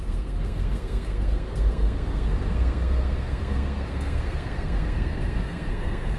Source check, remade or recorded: remade